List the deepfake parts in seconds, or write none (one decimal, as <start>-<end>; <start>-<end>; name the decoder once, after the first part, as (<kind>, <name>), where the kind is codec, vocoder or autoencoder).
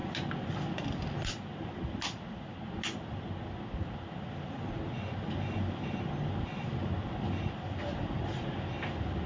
none